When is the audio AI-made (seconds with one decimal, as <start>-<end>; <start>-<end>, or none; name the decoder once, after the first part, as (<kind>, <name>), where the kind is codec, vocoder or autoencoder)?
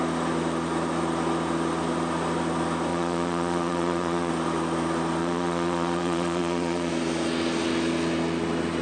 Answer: 2.9-4.3 (vocoder, Vocos); 5.2-6.9